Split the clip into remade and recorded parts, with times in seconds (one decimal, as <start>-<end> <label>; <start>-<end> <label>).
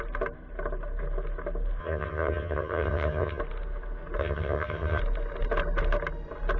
0.0-1.8 recorded; 1.8-3.4 remade; 3.4-4.2 recorded; 4.2-5.0 remade; 5.0-6.6 recorded